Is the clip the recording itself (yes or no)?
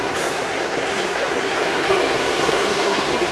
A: no